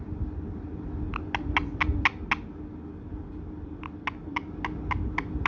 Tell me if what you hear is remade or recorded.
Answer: recorded